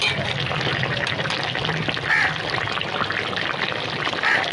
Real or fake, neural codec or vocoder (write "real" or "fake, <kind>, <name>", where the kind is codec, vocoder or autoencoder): real